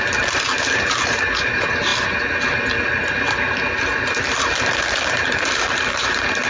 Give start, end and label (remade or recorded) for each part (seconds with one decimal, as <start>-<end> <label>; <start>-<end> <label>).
0.0-6.5 recorded